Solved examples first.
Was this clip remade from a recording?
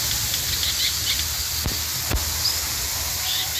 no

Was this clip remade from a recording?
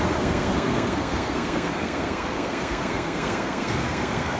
yes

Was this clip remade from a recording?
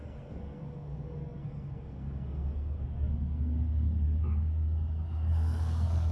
yes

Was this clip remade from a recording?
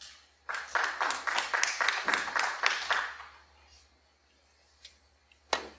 no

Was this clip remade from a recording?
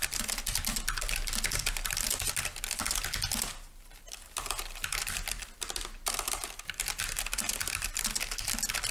no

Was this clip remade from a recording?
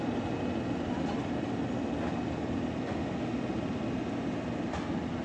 no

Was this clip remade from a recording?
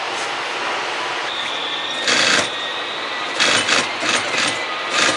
no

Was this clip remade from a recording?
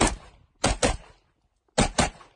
no